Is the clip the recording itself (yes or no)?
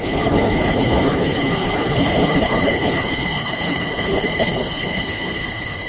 no